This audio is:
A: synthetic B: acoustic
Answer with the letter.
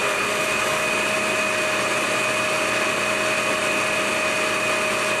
B